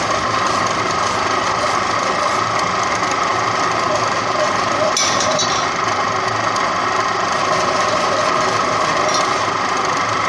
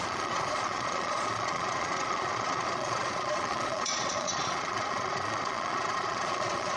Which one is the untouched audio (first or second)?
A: first